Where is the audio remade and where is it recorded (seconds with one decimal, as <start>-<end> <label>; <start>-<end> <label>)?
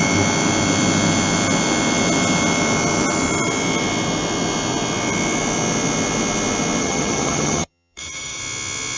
0.0-6.8 recorded; 6.8-8.4 remade; 8.4-9.0 recorded